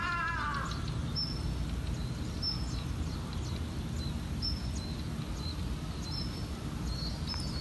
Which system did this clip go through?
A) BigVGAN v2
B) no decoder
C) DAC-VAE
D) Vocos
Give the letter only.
B